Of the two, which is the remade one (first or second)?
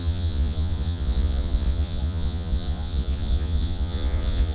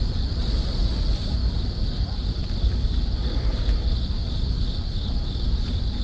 first